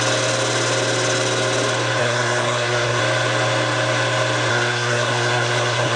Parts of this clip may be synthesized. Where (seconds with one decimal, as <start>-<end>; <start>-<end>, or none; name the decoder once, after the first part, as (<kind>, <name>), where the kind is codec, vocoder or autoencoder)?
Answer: 2.0-3.0 (codec, SNAC); 4.5-6.0

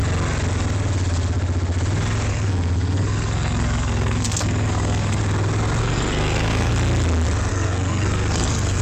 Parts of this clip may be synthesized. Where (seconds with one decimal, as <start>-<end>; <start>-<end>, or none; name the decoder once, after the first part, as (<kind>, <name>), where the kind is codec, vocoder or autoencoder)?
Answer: 2.3-5.2 (codec, SNAC); 5.8-6.7; 7.5-8.8

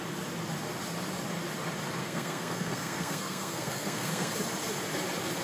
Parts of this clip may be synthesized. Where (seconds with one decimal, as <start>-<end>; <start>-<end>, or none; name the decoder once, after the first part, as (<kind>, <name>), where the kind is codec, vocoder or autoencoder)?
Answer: 2.0-4.3 (codec, SNAC)

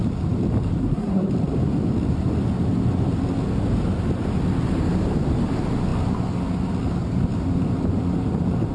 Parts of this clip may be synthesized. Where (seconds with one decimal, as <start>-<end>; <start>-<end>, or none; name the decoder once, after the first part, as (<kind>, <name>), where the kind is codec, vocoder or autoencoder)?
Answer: 0.8-1.3 (codec, SNAC)

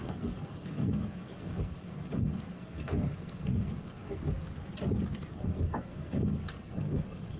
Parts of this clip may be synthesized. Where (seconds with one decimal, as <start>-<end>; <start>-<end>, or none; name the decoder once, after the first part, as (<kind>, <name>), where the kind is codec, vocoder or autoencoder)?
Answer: 0.0-4.2 (codec, SNAC); 5.3-7.4

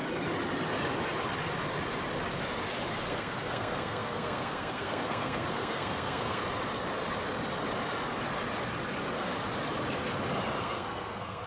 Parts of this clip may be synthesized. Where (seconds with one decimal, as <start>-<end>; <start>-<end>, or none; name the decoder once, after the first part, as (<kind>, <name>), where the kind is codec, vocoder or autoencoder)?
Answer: 3.1-6.4 (codec, SNAC); 10.6-11.5